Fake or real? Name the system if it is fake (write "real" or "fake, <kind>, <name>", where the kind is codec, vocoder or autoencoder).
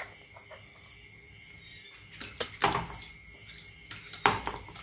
real